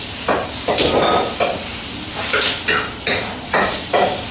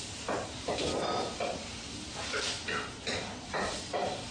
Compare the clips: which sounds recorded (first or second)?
first